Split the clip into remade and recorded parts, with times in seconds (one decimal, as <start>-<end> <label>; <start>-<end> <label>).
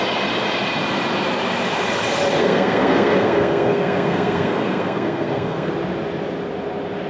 0.0-2.4 recorded; 2.4-5.7 remade; 5.7-7.1 recorded